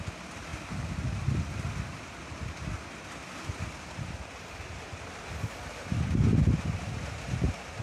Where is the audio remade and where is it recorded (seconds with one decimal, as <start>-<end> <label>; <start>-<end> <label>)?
0.0-0.5 recorded; 0.5-5.2 remade; 5.2-7.8 recorded